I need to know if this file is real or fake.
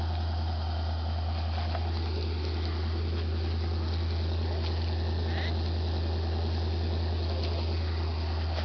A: real